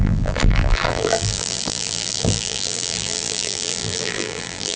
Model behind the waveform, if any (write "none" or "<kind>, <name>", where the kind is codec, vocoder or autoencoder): vocoder, BigVGAN v2